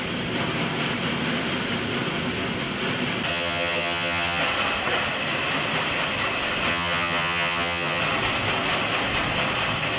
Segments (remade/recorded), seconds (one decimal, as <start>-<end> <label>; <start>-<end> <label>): 0.0-3.3 recorded; 3.3-4.4 remade; 4.4-6.7 recorded; 6.7-8.0 remade; 8.0-10.0 recorded